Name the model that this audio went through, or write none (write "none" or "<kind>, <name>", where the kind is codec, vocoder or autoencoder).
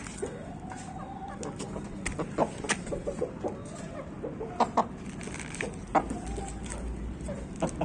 none